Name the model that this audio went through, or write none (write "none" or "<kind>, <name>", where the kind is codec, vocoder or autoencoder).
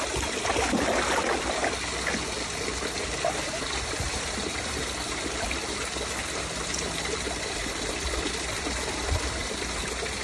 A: none